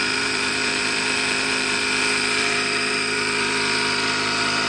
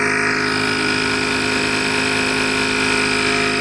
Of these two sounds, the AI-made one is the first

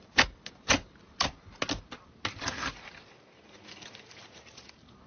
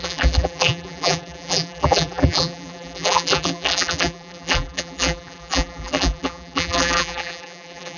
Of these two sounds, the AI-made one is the second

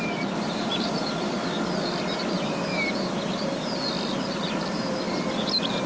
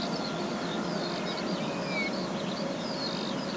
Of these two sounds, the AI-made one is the first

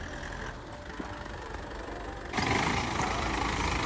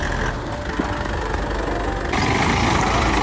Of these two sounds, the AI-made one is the first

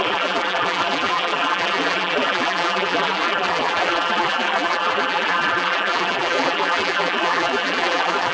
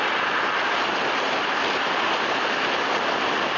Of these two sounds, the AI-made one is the first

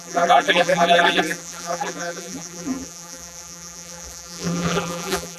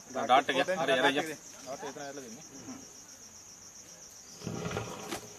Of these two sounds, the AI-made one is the first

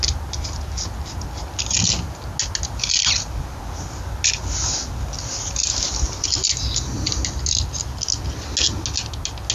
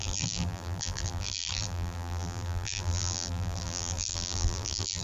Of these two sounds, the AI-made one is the second